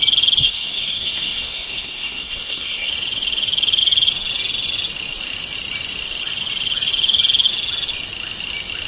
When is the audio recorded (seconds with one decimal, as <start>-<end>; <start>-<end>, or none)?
0.0-0.4; 2.9-8.9